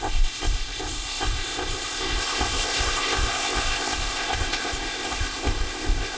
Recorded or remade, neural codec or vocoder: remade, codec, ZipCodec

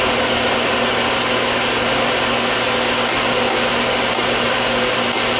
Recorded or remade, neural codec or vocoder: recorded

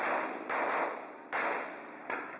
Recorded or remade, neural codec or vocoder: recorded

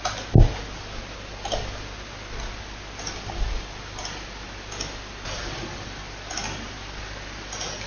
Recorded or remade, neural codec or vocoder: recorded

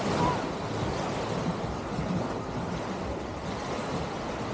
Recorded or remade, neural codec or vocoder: recorded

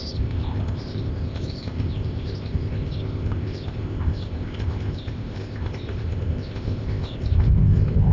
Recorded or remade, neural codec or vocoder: remade, codec, ZipCodec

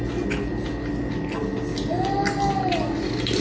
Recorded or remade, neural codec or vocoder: recorded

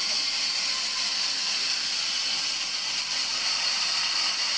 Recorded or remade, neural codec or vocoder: recorded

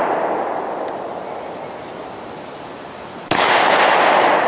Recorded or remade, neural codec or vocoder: recorded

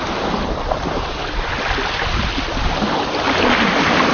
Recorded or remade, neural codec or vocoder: recorded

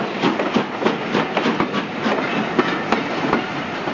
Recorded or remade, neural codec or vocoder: recorded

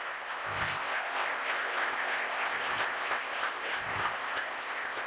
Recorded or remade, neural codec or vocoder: remade, codec, ZipCodec